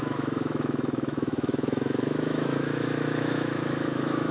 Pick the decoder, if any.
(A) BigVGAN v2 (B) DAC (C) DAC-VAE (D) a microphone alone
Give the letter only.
C